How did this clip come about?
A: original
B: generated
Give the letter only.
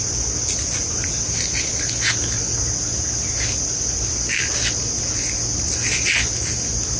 A